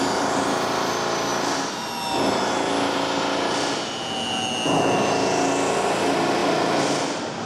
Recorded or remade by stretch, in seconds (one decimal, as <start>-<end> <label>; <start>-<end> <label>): 0.0-7.5 recorded